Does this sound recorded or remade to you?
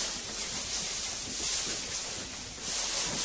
recorded